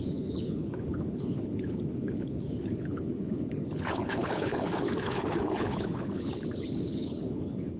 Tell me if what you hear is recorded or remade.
remade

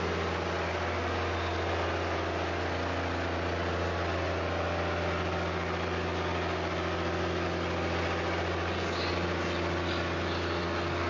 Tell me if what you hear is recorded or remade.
recorded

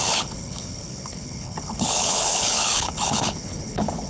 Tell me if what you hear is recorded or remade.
remade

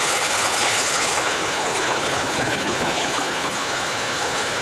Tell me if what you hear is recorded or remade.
remade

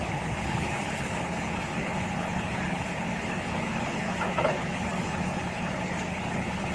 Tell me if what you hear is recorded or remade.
remade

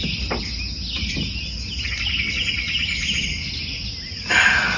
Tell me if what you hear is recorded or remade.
recorded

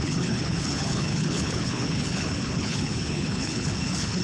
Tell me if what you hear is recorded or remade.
remade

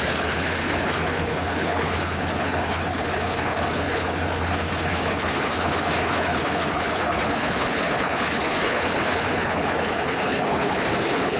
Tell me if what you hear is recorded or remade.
remade